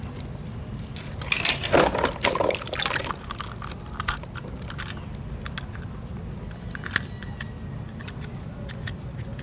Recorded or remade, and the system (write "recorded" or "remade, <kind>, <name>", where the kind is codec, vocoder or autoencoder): recorded